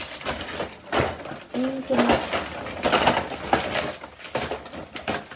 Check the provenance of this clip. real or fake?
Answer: real